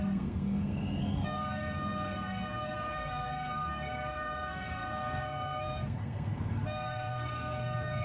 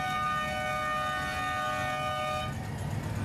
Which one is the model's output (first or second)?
first